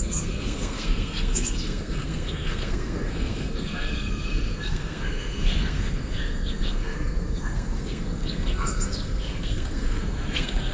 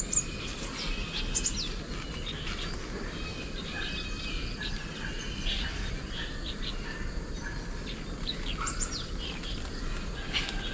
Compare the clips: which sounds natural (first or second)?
second